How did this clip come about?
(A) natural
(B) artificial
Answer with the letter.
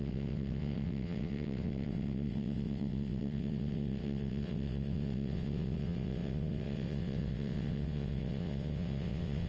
B